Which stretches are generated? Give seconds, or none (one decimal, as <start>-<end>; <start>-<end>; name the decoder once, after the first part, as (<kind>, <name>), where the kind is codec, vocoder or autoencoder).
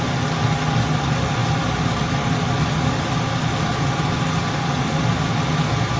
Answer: none